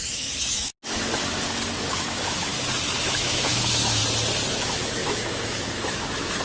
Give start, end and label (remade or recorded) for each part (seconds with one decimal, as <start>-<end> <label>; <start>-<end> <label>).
0.0-0.7 remade; 0.7-1.9 recorded; 1.9-2.5 remade; 2.5-3.0 recorded; 3.0-4.0 remade; 4.0-4.5 recorded; 4.5-6.4 remade